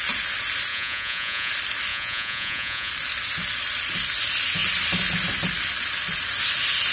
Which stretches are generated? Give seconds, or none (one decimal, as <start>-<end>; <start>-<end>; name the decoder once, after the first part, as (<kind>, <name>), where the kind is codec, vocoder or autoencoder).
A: 0.7-1.5 (vocoder, Vocos); 1.9-2.9